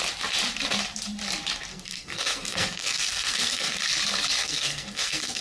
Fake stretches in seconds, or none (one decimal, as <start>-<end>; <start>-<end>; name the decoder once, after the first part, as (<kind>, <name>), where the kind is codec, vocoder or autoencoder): 1.7-3.8 (codec, SNAC); 4.4-5.4